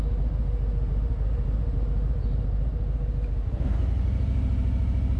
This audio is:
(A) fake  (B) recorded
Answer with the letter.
B